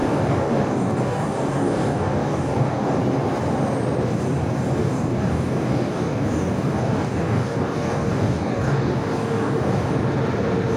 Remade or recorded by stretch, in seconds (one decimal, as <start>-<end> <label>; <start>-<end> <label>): 0.0-3.0 remade; 3.0-4.8 recorded; 4.8-9.9 remade; 9.9-10.8 recorded

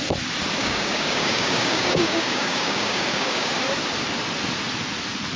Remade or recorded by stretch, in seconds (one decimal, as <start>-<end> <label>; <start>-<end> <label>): 0.0-0.6 recorded; 0.6-3.5 remade; 3.5-5.4 recorded

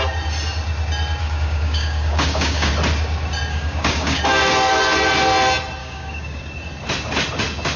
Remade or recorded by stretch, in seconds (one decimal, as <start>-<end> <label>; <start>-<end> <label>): 0.0-1.2 recorded; 1.2-2.7 remade; 2.7-3.5 recorded; 3.5-4.2 remade; 4.2-5.8 recorded; 5.8-6.4 remade; 6.4-7.8 recorded